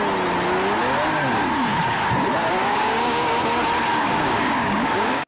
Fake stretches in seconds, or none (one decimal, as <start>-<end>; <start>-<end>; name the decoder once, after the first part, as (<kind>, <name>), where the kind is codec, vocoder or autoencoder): 2.6-3.4 (codec, DAC); 3.9-5.3